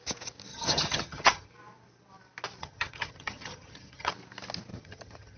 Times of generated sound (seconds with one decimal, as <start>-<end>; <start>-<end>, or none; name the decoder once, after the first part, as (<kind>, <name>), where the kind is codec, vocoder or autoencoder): 0.5-1.5 (vocoder, HiFi-GAN); 2.6-4.1; 4.7-5.4